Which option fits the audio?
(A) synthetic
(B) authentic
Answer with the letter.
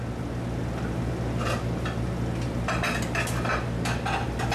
B